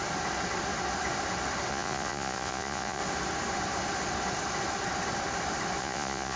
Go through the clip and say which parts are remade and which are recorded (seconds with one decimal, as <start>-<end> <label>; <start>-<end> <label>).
0.0-1.7 recorded; 1.7-3.0 remade; 3.0-5.8 recorded; 5.8-6.4 remade

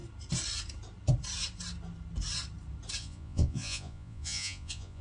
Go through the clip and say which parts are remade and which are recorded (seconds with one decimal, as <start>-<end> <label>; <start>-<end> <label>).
0.0-3.0 recorded; 3.0-5.0 remade

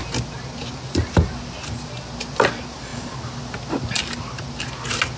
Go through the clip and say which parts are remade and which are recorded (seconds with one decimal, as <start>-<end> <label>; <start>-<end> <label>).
0.0-5.2 recorded

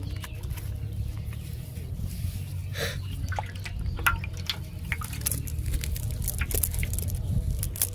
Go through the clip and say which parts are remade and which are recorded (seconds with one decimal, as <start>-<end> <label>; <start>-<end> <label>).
0.0-7.9 recorded